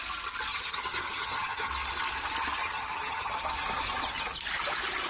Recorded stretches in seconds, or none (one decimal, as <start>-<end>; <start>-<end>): 0.0-0.5; 1.7-2.6; 3.4-5.1